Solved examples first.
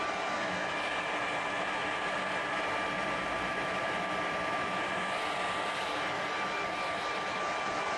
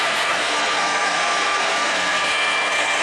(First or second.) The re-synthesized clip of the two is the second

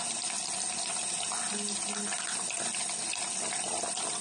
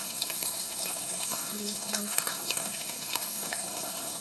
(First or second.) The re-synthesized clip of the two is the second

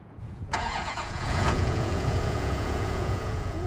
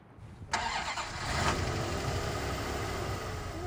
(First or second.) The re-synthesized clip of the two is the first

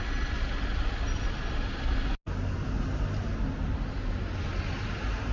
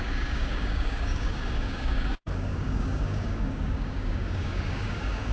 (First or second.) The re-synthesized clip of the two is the second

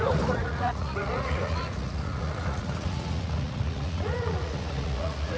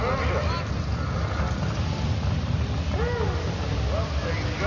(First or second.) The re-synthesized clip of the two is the first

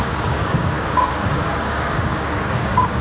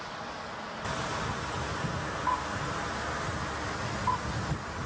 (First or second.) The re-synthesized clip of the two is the first